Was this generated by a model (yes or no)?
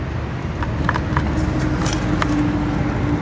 no